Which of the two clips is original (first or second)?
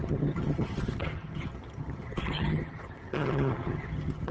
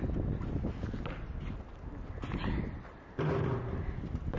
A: second